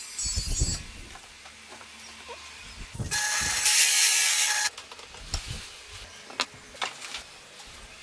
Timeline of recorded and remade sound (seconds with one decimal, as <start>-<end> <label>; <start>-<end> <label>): 0.0-8.0 recorded